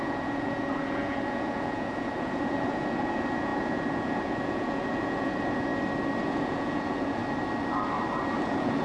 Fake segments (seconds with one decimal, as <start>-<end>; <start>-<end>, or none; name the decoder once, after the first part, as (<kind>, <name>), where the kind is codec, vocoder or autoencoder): 0.0-5.7 (vocoder, Vocos); 6.2-7.2; 8.4-8.8